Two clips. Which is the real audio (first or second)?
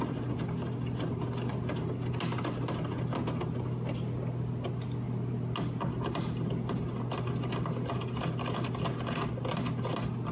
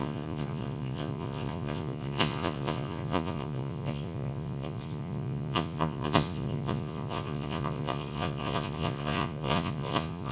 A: first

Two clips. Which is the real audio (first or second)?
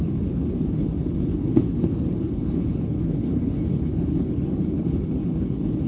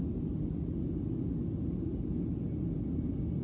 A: second